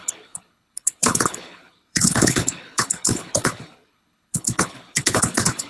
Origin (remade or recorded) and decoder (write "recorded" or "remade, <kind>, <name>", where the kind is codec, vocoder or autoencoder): remade, codec, HILCodec